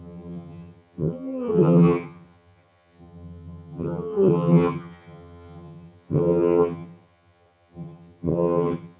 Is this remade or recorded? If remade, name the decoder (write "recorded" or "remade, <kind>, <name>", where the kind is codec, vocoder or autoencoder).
remade, vocoder, HiFi-GAN